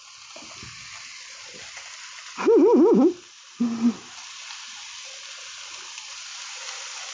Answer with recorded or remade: recorded